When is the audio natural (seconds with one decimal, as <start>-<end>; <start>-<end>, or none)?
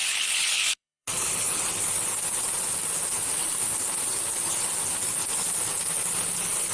1.6-6.7